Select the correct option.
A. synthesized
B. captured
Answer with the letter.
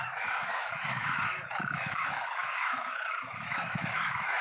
A